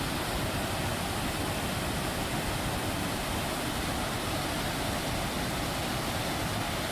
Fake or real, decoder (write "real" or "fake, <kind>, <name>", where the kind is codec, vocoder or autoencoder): real